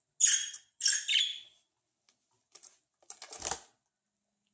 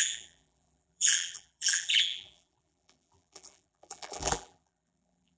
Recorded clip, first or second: first